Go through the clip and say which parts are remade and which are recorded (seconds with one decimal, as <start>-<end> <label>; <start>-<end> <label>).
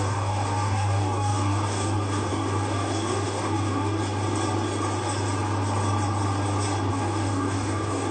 0.0-4.0 remade; 4.0-6.9 recorded; 6.9-8.1 remade